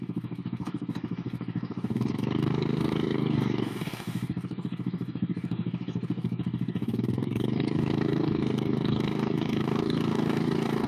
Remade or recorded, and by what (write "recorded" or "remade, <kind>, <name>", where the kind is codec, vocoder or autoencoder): remade, codec, DAC